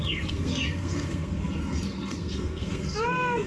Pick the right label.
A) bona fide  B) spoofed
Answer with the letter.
B